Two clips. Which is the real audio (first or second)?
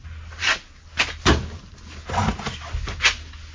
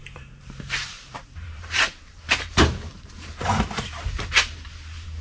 first